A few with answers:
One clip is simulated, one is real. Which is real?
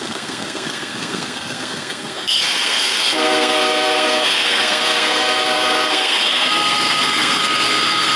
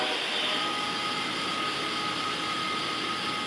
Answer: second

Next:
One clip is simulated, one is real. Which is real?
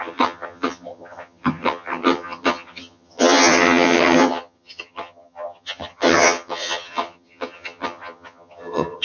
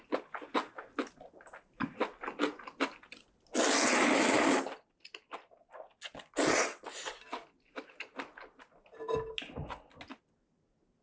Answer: second